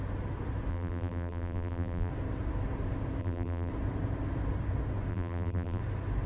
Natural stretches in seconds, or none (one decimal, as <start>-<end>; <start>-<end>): 0.0-0.7; 2.1-3.2; 3.7-5.1; 5.8-6.3